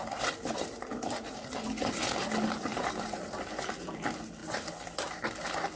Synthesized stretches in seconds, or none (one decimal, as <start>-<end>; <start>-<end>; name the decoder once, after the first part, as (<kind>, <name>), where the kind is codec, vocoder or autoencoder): 2.7-3.3 (vocoder, BigVGAN v2)